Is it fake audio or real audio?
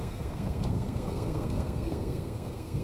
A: fake